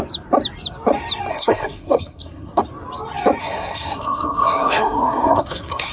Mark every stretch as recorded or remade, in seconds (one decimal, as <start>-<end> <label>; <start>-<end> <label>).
0.0-1.3 recorded; 1.3-2.6 remade; 2.6-3.4 recorded; 3.4-5.9 remade

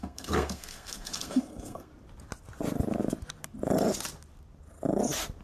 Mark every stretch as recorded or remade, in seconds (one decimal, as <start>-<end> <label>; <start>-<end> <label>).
0.0-1.9 remade; 1.9-5.4 recorded

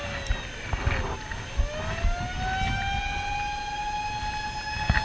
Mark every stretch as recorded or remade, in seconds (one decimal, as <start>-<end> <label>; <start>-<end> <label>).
0.0-5.0 recorded

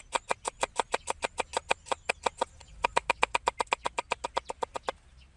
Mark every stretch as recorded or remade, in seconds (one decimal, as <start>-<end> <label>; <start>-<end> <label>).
0.0-5.4 recorded

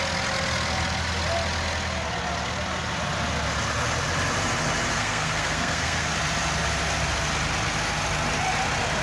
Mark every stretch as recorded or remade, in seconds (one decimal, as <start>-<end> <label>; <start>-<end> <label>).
0.0-4.9 recorded; 4.9-6.1 remade; 6.1-9.0 recorded

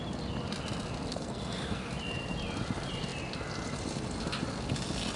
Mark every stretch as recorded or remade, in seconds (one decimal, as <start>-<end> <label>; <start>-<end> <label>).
0.0-1.1 recorded; 1.1-1.9 remade; 1.9-5.2 recorded

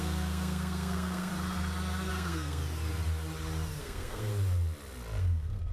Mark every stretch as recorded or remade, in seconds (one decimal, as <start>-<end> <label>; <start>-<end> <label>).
0.0-1.3 remade; 1.3-2.1 recorded; 2.1-2.6 remade; 2.6-3.8 recorded; 3.8-4.3 remade; 4.3-5.2 recorded; 5.2-5.7 remade